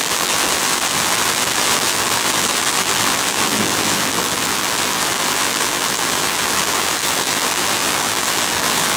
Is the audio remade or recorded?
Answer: remade